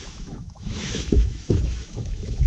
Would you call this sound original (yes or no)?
no